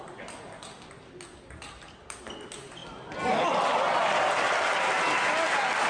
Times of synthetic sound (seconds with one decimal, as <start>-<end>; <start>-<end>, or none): none